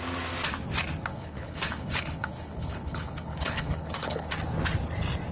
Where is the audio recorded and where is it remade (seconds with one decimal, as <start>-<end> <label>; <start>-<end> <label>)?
0.0-1.1 recorded; 1.1-4.3 remade; 4.3-5.3 recorded